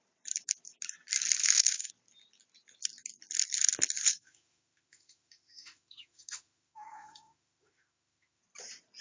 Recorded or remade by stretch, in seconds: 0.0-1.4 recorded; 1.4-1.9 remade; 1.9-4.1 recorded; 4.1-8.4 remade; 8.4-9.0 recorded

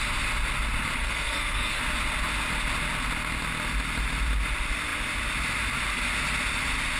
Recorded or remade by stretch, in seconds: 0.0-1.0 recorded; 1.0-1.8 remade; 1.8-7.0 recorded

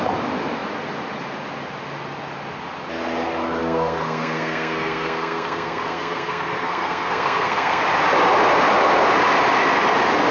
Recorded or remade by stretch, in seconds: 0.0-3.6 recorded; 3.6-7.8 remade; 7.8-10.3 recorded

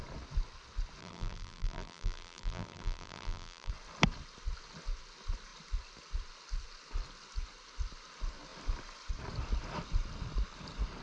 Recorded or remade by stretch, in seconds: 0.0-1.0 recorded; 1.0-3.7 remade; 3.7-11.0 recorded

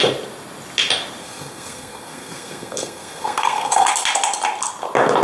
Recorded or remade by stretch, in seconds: 0.0-1.2 recorded; 1.2-3.9 remade; 3.9-5.2 recorded